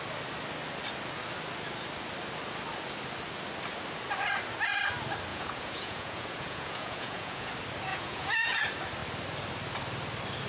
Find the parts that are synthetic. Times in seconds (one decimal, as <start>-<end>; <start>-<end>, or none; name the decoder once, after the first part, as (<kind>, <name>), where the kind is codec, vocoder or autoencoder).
5.3-7.5 (vocoder, Vocos); 7.9-8.6